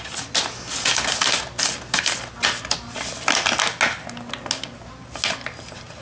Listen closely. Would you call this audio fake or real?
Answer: real